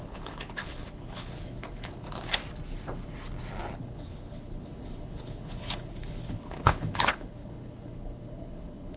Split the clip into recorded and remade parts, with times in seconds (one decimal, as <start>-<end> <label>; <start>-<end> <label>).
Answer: 0.0-2.4 remade; 2.4-3.7 recorded; 3.7-9.0 remade

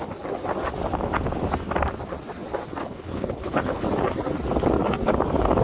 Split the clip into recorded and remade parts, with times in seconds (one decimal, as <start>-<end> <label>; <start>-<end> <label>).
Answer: 0.0-2.8 recorded; 2.8-3.8 remade; 3.8-5.6 recorded

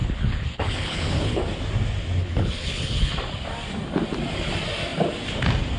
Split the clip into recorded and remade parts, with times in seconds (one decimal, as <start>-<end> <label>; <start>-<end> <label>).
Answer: 0.0-1.4 remade; 1.4-2.2 recorded; 2.2-3.1 remade; 3.1-5.8 recorded

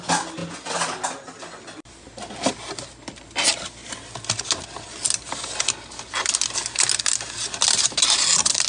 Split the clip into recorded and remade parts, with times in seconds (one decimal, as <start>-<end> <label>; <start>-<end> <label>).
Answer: 0.0-8.7 recorded

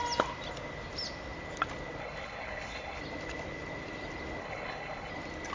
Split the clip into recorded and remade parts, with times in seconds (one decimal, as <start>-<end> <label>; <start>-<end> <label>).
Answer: 0.0-2.0 recorded; 2.0-3.0 remade; 3.0-4.4 recorded; 4.4-5.1 remade; 5.1-5.5 recorded

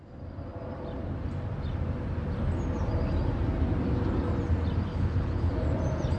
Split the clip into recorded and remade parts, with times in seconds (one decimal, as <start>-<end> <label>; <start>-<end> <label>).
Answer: 0.0-4.9 recorded; 4.9-5.5 remade; 5.5-6.2 recorded

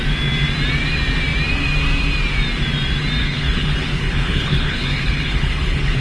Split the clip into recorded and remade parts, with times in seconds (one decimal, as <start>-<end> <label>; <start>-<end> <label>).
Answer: 0.0-3.2 recorded; 3.2-6.0 remade

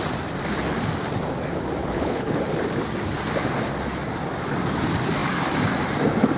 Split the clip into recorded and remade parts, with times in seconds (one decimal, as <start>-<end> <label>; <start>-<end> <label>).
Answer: 0.0-1.8 recorded; 1.8-2.4 remade; 2.4-6.4 recorded